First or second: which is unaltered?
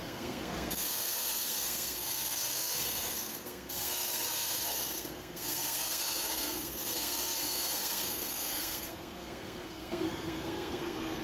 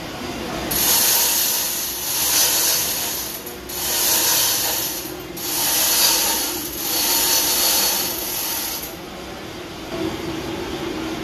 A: second